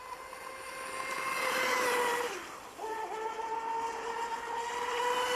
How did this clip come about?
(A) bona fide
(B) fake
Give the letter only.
A